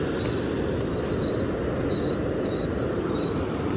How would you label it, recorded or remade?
recorded